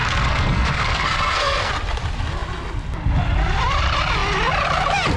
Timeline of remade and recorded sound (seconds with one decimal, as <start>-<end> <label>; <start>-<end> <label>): 0.0-1.7 remade; 1.7-5.2 recorded